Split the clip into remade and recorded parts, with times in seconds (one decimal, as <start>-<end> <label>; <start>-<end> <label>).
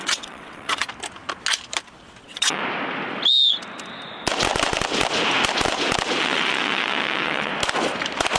0.0-0.8 remade; 0.8-2.2 recorded; 2.2-2.6 remade; 2.6-6.2 recorded; 6.2-7.5 remade; 7.5-8.4 recorded